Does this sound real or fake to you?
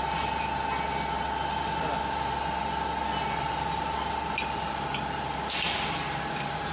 real